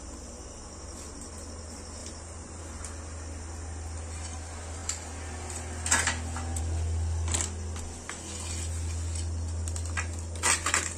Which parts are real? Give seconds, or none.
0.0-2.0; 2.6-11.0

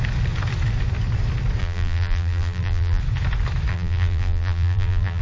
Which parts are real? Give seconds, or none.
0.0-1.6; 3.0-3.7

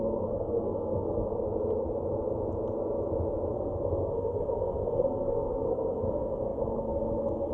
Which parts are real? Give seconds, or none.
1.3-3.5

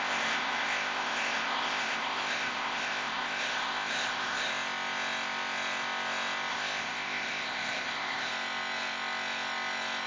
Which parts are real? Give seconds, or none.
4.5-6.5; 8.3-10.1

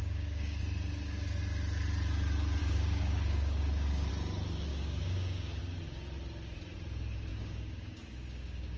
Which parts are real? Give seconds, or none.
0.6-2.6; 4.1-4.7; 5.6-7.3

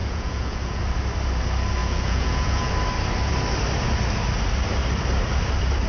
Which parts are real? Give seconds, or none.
0.8-1.8; 2.7-5.9

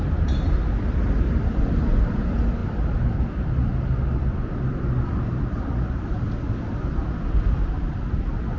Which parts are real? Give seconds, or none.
7.0-7.9

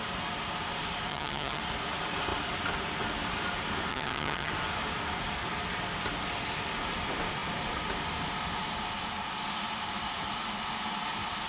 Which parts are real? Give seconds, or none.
0.0-1.1; 1.6-3.9; 4.5-11.5